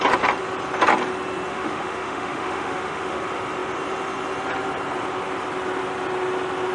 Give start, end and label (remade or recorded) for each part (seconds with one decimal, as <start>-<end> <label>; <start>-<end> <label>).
0.0-1.5 recorded; 1.5-3.2 remade; 3.2-6.7 recorded